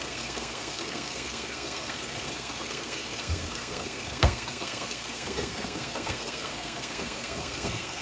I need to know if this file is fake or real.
fake